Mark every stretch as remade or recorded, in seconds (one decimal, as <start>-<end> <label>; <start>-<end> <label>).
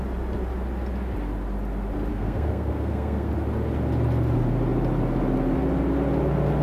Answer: 0.0-2.1 recorded; 2.1-3.3 remade; 3.3-6.6 recorded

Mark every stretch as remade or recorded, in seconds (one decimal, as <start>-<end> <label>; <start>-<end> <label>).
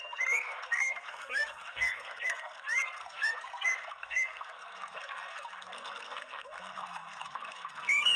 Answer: 0.0-8.2 remade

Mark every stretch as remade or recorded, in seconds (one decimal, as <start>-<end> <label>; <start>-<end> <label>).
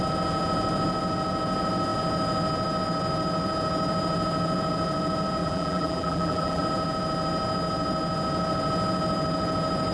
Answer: 0.0-5.4 recorded; 5.4-6.6 remade; 6.6-9.9 recorded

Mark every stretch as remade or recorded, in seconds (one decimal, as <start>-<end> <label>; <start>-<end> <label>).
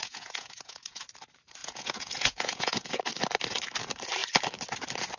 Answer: 0.0-1.0 remade; 1.0-1.6 recorded; 1.6-3.0 remade; 3.0-5.2 recorded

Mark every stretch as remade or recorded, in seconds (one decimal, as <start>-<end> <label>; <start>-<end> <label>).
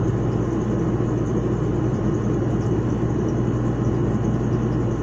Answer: 0.0-1.9 recorded; 1.9-3.3 remade; 3.3-5.0 recorded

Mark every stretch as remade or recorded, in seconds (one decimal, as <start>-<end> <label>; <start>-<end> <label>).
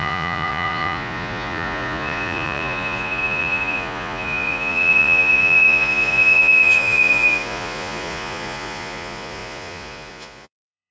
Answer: 0.0-10.9 remade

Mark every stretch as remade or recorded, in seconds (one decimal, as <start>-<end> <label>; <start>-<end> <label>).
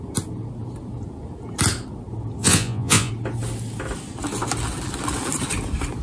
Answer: 0.0-2.4 recorded; 2.4-3.1 remade; 3.1-6.0 recorded